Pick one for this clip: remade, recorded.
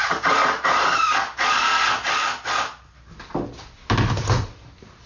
recorded